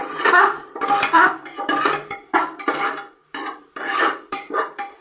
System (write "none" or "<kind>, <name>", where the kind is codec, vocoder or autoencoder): vocoder, BigVGAN v2